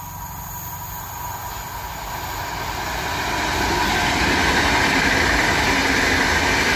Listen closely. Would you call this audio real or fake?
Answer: real